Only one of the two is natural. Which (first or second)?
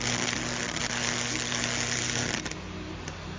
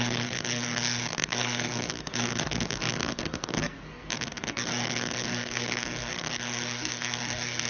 first